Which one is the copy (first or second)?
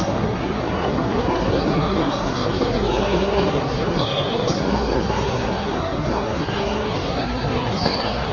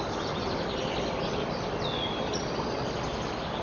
first